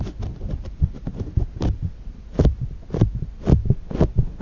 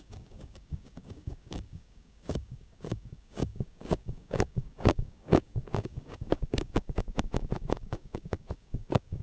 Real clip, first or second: first